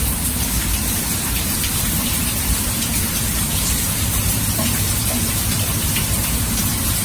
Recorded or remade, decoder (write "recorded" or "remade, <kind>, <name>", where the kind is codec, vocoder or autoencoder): remade, vocoder, BigVGAN v2